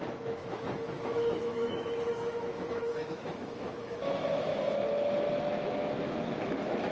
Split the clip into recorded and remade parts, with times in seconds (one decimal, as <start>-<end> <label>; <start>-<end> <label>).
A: 0.0-4.5 remade; 4.5-5.3 recorded; 5.3-6.9 remade